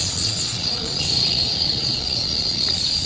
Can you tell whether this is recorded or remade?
remade